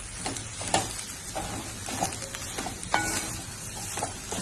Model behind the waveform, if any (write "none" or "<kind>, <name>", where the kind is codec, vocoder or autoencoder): none